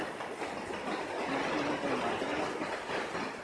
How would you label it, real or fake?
real